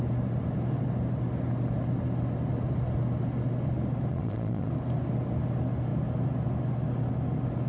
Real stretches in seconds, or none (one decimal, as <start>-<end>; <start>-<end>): 0.0-4.1; 4.7-7.7